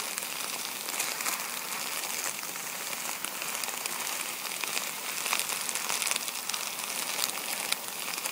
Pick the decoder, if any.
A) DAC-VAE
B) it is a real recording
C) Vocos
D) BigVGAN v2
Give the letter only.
B